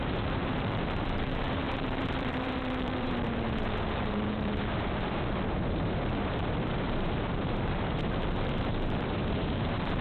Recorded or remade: remade